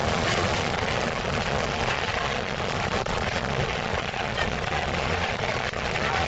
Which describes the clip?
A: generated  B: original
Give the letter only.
A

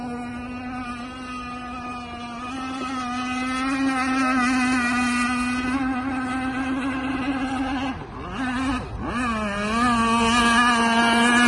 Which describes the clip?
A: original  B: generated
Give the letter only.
A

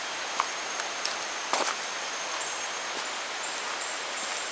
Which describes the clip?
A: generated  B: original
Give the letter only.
B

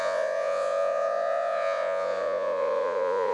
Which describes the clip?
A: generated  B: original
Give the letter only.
A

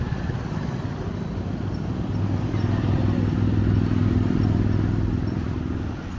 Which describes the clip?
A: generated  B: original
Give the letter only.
B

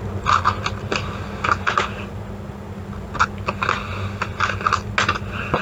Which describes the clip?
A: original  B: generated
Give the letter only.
A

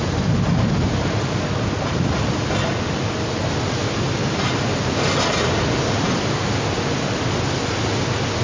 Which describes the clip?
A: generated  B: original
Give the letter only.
B